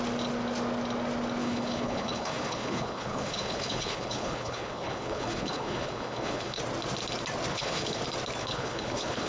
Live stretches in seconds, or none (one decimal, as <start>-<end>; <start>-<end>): 0.0-1.4; 6.6-7.5; 8.0-8.4